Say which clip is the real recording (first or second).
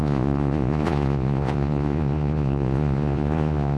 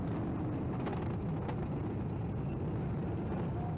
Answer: second